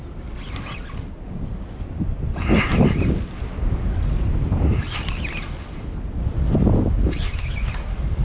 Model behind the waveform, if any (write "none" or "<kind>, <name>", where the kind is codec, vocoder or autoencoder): none